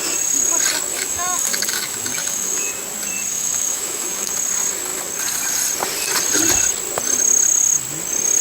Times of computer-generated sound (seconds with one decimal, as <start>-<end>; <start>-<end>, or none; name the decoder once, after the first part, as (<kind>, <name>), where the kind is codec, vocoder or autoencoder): 0.9-2.7 (autoencoder, DAC-VAE); 3.3-4.3